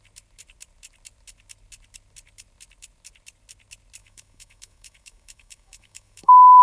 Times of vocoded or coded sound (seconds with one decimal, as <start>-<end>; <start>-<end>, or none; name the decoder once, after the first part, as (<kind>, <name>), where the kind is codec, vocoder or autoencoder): 4.0-6.6 (autoencoder, DAC-VAE)